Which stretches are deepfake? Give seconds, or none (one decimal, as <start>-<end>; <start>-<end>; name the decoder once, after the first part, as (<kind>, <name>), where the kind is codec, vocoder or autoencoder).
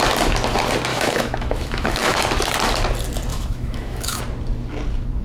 0.9-2.2 (autoencoder, DAC-VAE); 3.3-4.2